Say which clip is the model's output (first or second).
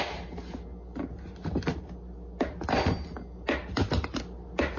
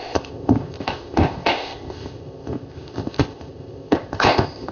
second